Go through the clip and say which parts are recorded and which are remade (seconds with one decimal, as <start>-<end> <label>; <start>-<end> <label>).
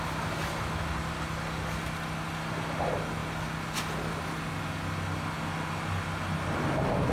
0.0-7.1 recorded